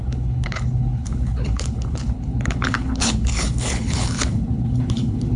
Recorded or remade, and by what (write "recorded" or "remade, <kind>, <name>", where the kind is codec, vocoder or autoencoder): remade, codec, HILCodec